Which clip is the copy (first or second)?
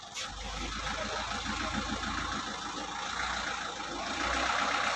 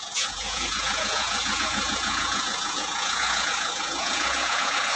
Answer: second